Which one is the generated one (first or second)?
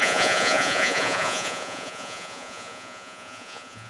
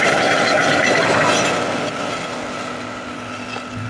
first